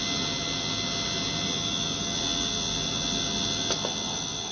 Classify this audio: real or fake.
real